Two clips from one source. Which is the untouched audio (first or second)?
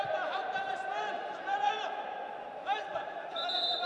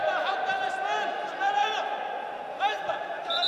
second